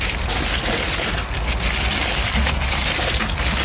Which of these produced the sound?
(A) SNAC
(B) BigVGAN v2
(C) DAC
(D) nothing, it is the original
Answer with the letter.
D